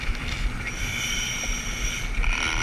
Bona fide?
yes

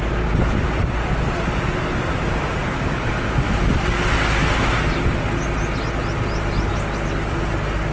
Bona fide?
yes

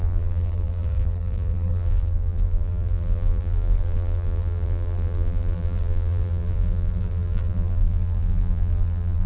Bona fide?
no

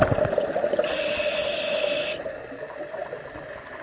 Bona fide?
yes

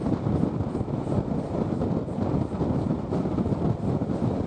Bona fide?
yes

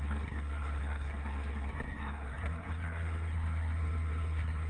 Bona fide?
no